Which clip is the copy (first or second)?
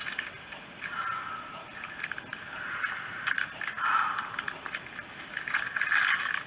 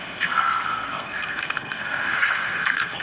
second